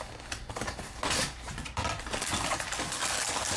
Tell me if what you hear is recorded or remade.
recorded